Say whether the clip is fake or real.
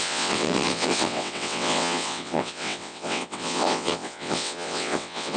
fake